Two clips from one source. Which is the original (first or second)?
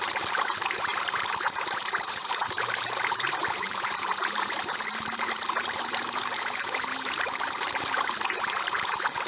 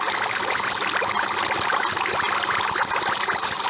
second